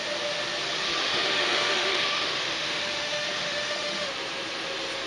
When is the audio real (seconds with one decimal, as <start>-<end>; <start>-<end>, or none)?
0.0-1.0; 4.1-5.1